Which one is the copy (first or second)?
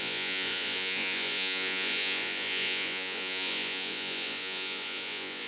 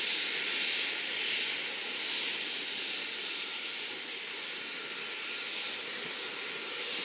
first